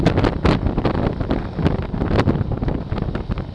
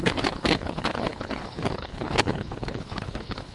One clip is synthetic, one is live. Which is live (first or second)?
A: first